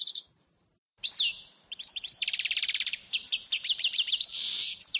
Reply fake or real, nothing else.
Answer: fake